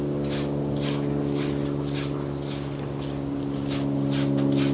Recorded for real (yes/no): yes